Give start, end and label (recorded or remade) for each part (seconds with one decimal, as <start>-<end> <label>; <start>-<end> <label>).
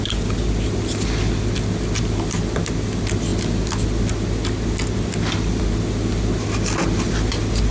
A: 0.0-7.7 recorded